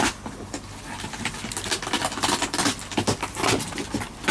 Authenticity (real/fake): real